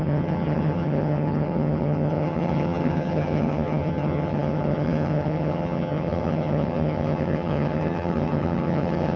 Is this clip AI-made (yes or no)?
yes